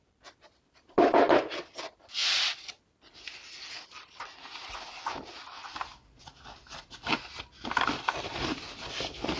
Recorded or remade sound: recorded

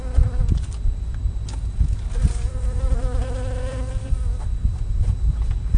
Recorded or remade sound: remade